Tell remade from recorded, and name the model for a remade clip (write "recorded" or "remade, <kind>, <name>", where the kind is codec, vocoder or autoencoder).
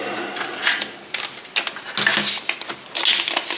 recorded